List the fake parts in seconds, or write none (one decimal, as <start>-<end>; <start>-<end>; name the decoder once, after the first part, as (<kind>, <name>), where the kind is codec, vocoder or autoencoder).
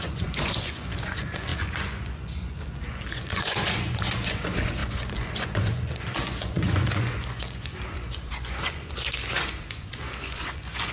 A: 0.0-10.9 (vocoder, Vocos)